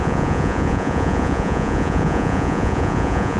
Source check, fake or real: fake